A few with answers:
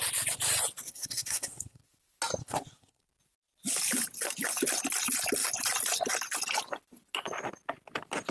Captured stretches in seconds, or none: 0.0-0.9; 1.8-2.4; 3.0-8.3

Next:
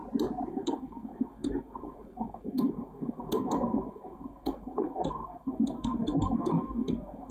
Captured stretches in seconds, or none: 0.0-0.5

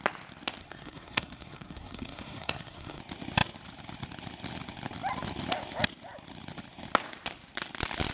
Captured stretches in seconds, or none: 0.0-0.6; 3.0-8.1

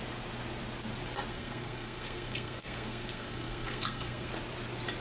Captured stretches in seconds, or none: 0.0-1.3; 4.3-5.0

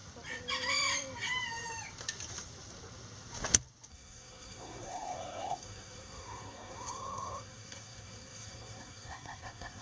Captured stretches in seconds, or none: 0.0-3.9